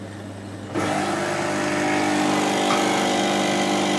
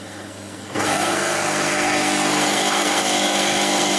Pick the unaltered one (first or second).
first